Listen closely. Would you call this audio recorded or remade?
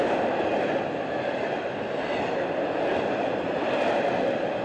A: recorded